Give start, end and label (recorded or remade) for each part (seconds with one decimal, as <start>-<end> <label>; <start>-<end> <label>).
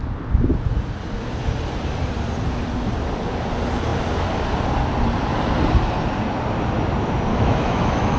0.0-7.3 recorded; 7.3-8.2 remade